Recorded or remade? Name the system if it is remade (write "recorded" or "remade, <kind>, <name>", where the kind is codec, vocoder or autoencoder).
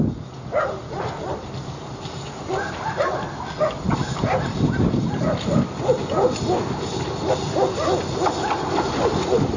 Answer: recorded